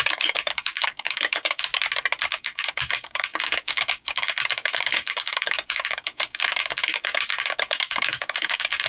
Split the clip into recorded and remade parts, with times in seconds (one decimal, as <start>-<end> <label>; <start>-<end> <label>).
0.0-1.7 remade; 1.7-2.3 recorded; 2.3-8.9 remade